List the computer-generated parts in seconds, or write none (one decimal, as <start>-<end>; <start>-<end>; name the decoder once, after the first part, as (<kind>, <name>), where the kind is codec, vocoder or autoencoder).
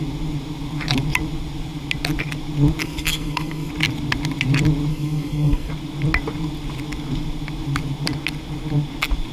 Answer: 2.8-3.7 (codec, SNAC); 4.9-5.7